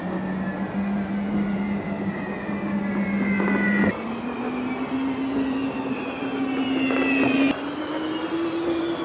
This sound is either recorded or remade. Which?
recorded